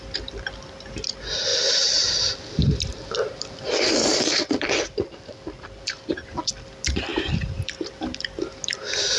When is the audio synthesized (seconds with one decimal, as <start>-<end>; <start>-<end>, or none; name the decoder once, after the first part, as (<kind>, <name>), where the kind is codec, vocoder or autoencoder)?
1.5-6.1 (vocoder, BigVGAN v2); 7.1-7.7